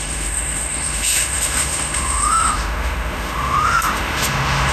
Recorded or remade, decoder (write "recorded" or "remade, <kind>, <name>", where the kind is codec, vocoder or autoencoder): remade, autoencoder, DAC-VAE